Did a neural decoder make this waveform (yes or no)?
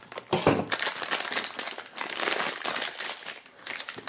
no